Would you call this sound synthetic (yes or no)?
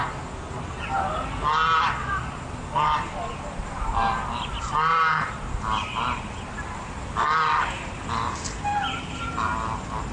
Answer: no